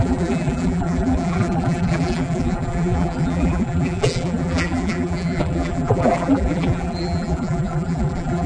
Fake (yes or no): yes